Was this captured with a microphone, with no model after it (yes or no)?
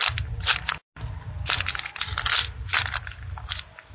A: yes